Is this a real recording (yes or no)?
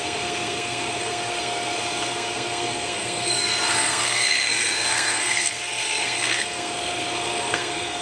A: no